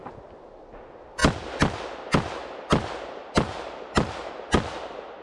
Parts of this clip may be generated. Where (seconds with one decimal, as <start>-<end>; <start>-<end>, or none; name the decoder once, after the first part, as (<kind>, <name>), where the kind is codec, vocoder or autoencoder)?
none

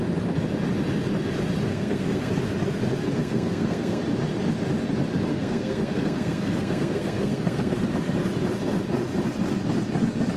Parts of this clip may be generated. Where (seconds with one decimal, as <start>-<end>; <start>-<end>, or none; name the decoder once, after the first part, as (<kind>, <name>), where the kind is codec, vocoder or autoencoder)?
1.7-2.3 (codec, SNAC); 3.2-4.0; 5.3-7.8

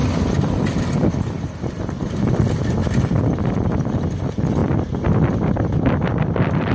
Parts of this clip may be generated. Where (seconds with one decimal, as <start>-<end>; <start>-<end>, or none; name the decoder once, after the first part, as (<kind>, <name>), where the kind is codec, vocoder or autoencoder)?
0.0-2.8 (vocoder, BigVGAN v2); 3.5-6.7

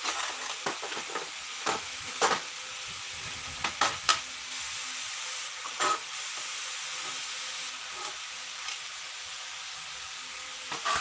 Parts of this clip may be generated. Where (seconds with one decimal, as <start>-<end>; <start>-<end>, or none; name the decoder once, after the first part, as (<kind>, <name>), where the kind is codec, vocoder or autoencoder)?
1.5-2.3 (autoencoder, DAC-VAE)

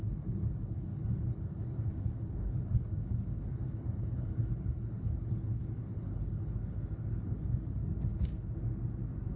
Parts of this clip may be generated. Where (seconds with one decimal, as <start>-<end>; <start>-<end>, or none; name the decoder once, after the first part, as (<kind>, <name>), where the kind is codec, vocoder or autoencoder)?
0.0-7.8 (codec, HILCodec)

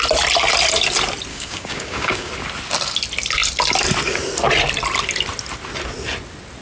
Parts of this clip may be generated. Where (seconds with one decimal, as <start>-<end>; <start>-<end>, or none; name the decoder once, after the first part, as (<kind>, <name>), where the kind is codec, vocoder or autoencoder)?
1.3-2.3 (codec, DAC)